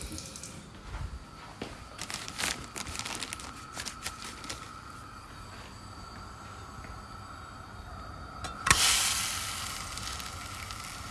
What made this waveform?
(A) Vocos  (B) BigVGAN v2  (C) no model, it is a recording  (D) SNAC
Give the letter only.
C